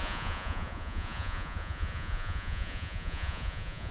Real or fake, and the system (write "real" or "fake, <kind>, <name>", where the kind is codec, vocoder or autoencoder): fake, vocoder, Vocos